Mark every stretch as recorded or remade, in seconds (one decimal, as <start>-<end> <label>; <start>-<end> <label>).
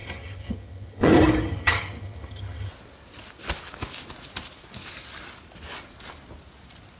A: 0.0-2.7 remade; 2.7-7.0 recorded